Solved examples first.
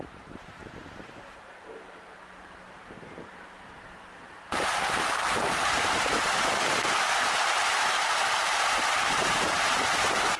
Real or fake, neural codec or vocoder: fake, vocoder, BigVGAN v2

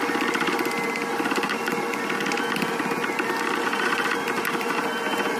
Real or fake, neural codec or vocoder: real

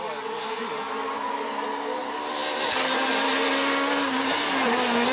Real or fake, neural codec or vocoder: real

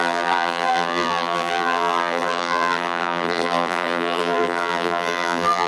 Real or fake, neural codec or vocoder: fake, vocoder, BigVGAN v2